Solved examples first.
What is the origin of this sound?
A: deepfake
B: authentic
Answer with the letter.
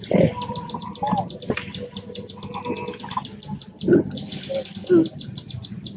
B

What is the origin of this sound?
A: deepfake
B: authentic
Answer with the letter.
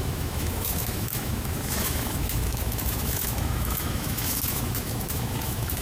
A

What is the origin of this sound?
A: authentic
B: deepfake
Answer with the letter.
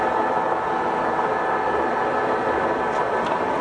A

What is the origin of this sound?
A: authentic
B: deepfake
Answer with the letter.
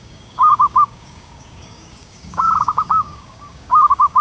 B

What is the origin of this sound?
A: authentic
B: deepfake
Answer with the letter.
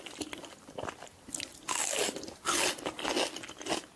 A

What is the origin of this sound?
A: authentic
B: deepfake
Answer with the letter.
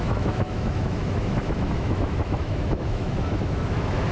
B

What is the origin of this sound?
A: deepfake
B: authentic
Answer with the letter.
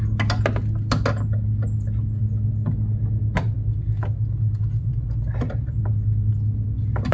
B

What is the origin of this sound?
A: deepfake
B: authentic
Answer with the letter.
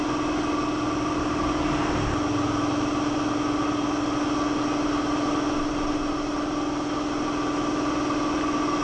B